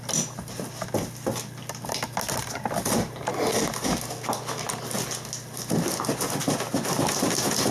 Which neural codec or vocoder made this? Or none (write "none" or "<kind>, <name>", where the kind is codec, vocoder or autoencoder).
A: none